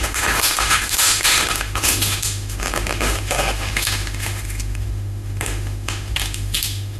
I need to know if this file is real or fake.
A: fake